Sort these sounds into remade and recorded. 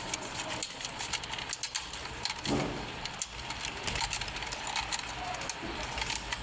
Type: recorded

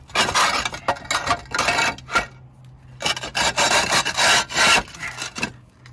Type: recorded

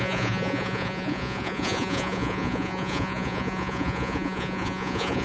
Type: remade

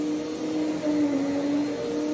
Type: recorded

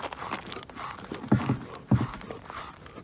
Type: recorded